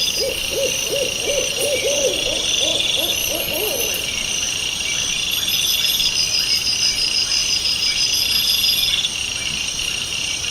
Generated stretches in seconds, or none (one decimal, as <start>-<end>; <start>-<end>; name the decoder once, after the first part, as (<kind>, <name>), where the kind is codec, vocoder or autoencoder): 7.4-8.0 (vocoder, BigVGAN v2)